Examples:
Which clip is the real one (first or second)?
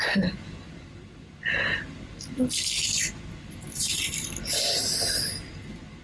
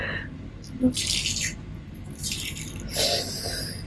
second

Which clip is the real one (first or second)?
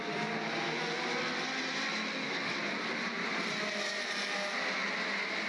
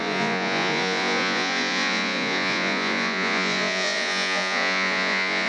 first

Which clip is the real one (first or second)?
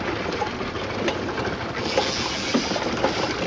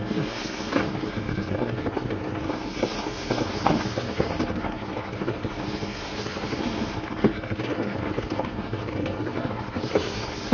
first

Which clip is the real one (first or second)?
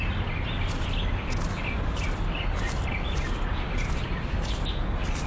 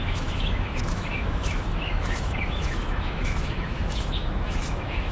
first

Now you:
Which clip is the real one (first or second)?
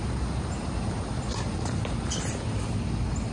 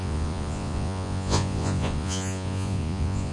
first